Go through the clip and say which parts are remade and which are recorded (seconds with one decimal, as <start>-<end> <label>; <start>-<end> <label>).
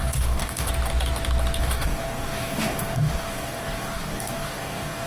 0.0-0.7 remade; 0.7-1.6 recorded; 1.6-5.1 remade